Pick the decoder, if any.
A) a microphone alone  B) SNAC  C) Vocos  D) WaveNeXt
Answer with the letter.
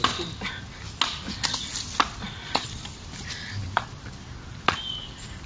A